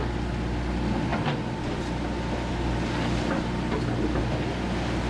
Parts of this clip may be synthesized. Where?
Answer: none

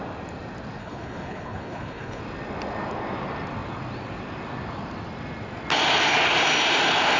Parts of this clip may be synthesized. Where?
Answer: 0.8-2.2 (codec, HILCodec)

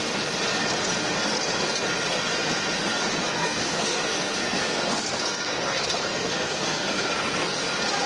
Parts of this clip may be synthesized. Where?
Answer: 3.2-7.6 (codec, SNAC)

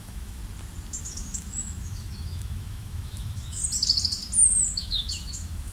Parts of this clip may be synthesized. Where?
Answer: 0.0-0.4 (autoencoder, DAC-VAE); 1.0-3.6; 4.8-5.7